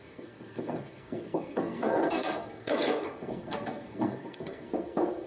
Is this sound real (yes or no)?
no